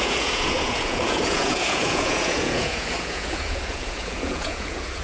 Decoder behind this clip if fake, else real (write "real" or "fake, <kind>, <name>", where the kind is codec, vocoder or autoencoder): fake, vocoder, Vocos